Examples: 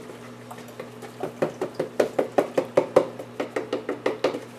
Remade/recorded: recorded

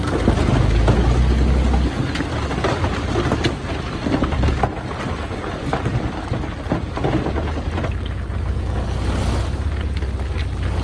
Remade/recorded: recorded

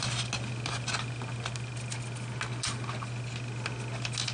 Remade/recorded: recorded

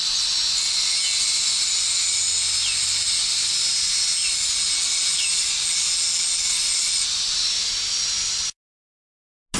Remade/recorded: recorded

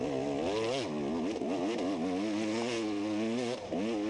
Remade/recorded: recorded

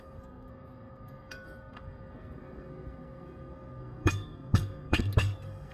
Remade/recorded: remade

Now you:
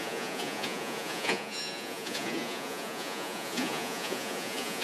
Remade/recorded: remade